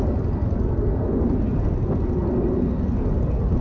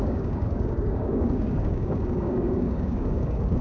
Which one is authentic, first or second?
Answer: first